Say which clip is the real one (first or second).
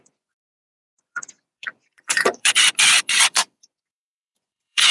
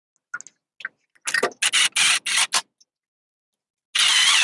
second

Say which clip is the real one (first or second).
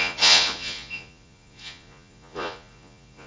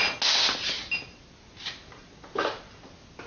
second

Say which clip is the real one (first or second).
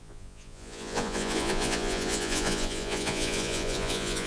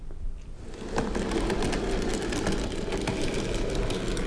second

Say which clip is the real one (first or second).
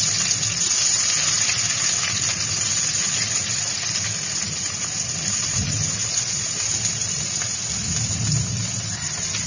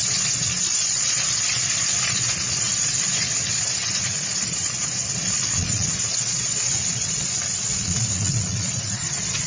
first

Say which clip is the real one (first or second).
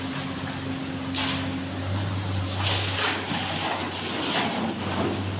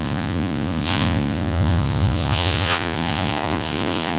first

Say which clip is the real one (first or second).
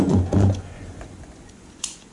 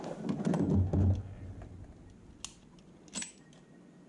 second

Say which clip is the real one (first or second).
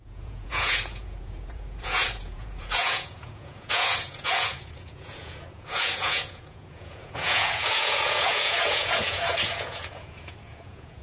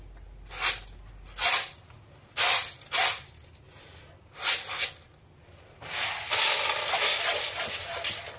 second